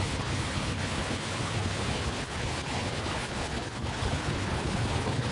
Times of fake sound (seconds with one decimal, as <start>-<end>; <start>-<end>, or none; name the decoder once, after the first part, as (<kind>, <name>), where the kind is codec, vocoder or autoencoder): 0.0-5.3 (codec, HILCodec)